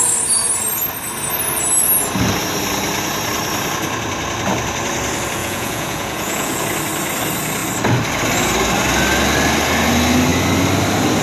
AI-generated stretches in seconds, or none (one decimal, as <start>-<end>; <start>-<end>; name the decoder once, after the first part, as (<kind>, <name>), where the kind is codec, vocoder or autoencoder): 5.4-6.6 (vocoder, Vocos)

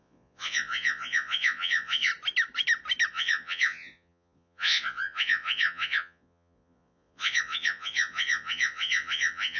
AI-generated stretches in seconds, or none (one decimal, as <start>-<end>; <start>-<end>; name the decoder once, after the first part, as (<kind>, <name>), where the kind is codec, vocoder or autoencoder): 0.0-2.1 (vocoder, Vocos); 3.1-9.6